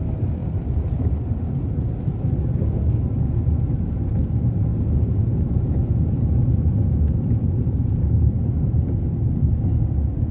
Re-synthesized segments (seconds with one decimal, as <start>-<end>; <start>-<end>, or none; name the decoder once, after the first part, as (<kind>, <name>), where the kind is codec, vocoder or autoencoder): 4.7-7.9 (vocoder, Vocos)